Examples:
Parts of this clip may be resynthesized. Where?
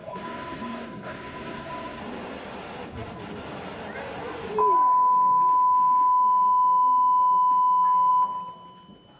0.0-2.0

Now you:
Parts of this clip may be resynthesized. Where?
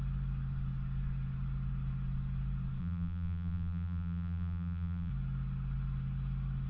2.8-5.1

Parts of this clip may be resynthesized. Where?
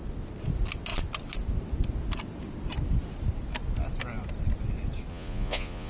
5.1-5.9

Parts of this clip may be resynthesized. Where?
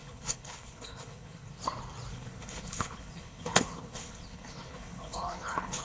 0.0-1.6; 2.1-5.8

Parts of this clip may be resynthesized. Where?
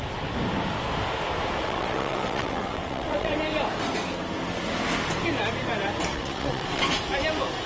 1.6-3.3; 6.1-6.8